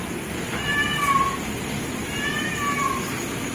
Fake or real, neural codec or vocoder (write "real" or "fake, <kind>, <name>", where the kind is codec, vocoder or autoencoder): real